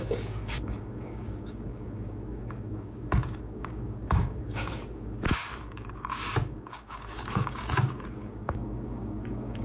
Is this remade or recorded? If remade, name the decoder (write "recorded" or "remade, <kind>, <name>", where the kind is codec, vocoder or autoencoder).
remade, codec, DAC